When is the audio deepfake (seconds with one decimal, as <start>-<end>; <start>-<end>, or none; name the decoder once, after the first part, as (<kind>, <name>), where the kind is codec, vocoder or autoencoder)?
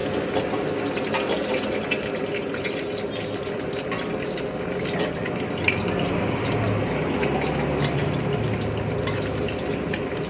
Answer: none